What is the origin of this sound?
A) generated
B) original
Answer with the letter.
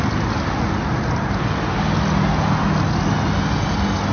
B